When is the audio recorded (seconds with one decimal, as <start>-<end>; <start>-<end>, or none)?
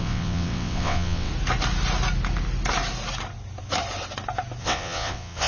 1.3-4.6